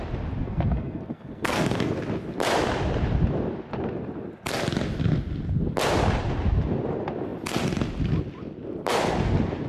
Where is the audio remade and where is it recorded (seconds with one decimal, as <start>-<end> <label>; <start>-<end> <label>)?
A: 0.0-0.4 recorded; 0.4-1.9 remade; 1.9-9.7 recorded

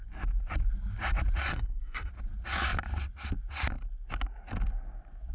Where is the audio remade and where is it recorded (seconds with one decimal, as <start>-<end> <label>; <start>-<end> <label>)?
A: 0.0-1.5 recorded; 1.5-2.1 remade; 2.1-5.3 recorded